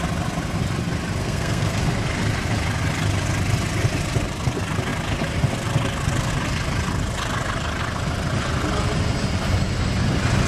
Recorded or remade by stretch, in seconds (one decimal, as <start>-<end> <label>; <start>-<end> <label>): 0.0-1.2 recorded; 1.2-1.8 remade; 1.8-10.5 recorded